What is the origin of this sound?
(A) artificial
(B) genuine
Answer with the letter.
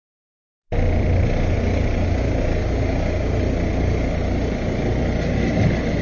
B